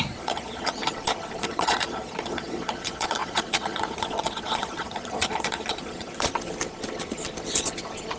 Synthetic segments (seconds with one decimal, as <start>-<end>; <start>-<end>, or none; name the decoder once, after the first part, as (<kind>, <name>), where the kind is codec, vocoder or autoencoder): 0.0-0.8 (vocoder, Vocos); 1.4-6.3